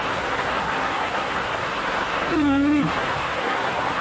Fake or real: fake